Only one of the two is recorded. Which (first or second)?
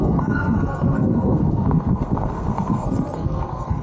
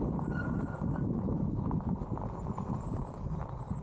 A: second